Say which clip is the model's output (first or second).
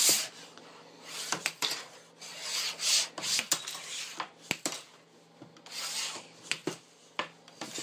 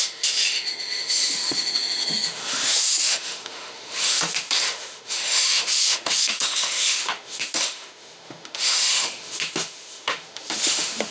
second